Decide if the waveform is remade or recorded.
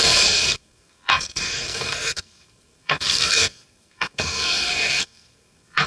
remade